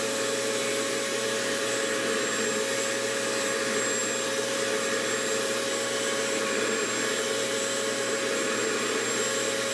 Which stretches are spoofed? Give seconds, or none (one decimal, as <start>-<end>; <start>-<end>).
none